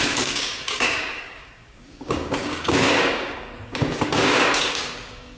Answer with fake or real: fake